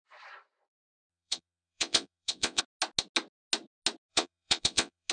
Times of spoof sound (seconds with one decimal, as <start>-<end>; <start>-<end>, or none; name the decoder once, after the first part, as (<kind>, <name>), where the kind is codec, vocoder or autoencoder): 1.1-2.6 (vocoder, Vocos); 4.1-5.1